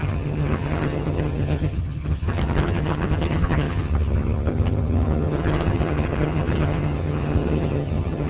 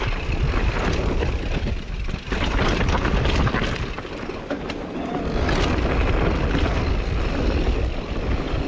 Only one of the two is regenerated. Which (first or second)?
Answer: first